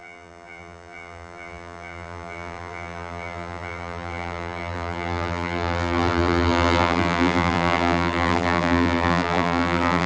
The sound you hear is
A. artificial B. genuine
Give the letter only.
A